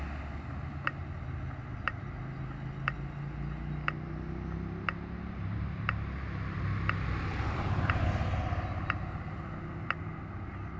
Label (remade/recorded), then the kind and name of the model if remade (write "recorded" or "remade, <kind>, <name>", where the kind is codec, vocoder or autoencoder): recorded